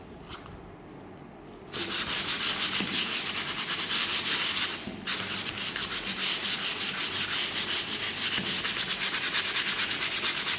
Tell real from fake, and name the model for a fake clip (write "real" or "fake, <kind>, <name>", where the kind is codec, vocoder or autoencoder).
real